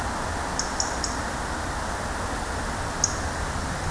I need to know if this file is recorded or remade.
recorded